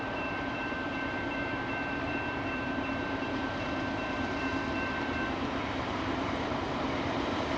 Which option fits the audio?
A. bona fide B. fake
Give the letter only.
B